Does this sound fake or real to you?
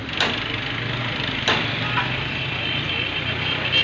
real